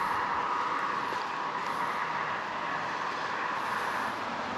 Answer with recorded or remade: recorded